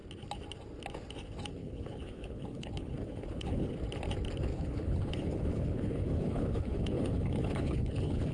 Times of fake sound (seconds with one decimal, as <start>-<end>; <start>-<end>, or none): 1.6-3.7; 4.5-8.3